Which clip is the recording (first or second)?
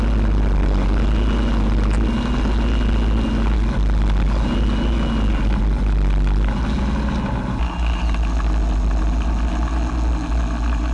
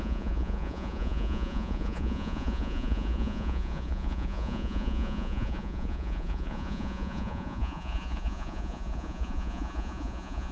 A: first